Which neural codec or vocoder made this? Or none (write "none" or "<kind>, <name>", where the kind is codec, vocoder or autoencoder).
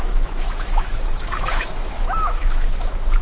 autoencoder, DAC-VAE